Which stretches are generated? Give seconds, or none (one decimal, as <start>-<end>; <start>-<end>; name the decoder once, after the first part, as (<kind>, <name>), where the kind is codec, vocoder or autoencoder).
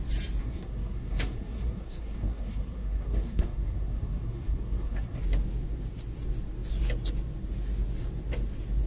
0.4-5.2 (codec, SNAC)